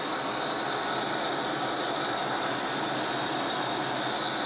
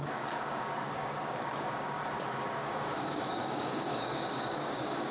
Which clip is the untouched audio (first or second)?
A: first